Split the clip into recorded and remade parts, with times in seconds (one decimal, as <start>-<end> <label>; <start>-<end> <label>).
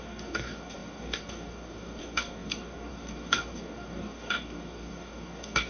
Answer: 0.0-5.7 remade